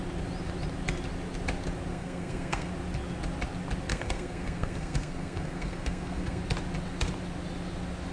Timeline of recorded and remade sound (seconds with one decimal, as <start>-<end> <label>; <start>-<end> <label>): 0.0-1.9 recorded; 1.9-2.7 remade; 2.7-3.9 recorded; 3.9-6.4 remade; 6.4-8.1 recorded